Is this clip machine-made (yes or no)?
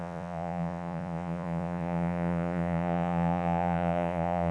yes